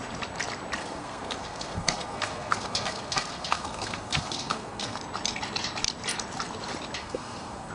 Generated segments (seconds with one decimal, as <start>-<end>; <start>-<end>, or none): 0.8-5.0; 7.0-7.7